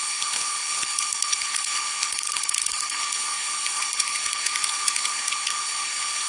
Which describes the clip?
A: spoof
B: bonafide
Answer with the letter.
A